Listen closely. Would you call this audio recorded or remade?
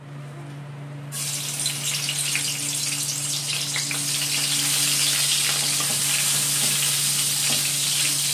recorded